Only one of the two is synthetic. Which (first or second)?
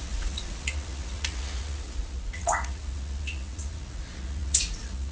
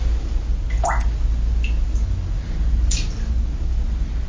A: first